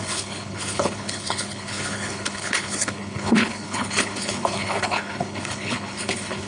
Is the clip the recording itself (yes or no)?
no